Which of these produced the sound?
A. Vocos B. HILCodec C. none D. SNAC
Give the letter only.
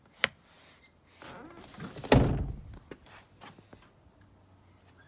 C